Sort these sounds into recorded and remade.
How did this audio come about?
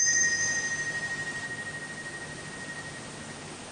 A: recorded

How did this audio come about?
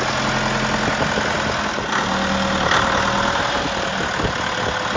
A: recorded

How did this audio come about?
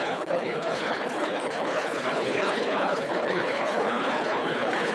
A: remade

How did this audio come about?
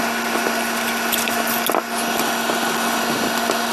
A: recorded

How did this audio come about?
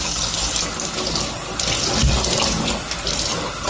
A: recorded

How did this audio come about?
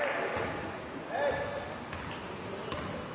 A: recorded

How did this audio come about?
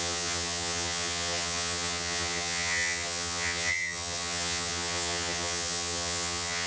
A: remade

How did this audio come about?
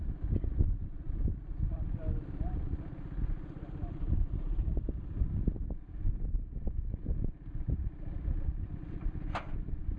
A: recorded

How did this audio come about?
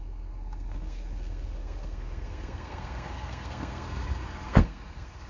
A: remade